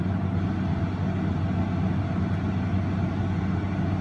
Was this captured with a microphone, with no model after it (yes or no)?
yes